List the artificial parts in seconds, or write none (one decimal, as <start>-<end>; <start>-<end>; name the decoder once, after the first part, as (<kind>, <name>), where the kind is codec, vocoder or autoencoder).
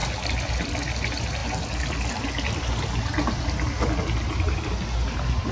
none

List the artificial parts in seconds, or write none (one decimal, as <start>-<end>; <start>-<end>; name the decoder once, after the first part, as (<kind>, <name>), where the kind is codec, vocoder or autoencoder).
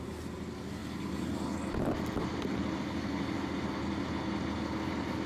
none